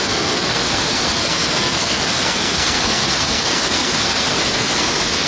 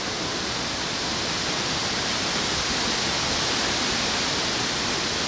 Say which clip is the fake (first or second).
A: first